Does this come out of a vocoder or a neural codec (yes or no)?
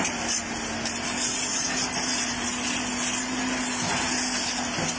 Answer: no